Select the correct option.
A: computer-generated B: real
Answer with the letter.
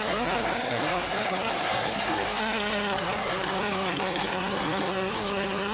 A